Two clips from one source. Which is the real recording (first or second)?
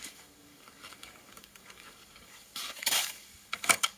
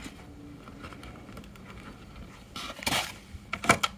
second